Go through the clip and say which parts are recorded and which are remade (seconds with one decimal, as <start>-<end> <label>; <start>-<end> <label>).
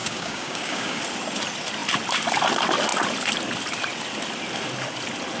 0.0-1.0 remade; 1.0-5.4 recorded